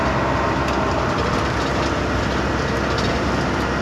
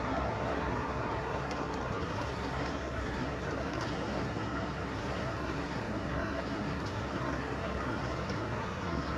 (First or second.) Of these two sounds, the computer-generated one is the second